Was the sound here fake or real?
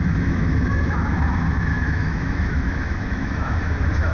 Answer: fake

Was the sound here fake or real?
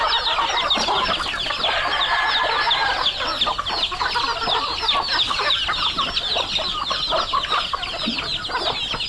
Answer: real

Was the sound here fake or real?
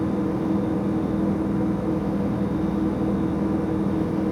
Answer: real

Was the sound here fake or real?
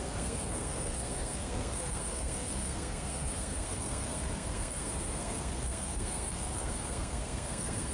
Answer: fake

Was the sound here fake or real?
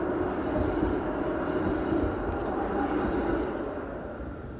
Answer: real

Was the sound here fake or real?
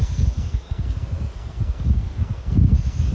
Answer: fake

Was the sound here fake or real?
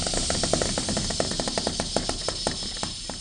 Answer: real